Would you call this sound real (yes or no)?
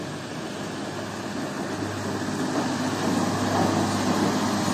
yes